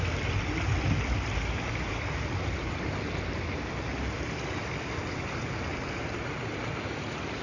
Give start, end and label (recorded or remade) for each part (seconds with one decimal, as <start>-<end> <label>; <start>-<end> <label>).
0.0-7.4 recorded